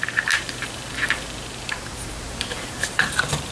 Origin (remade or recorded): remade